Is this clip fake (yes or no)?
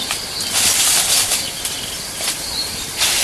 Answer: no